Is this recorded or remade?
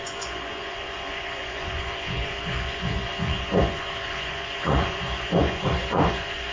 remade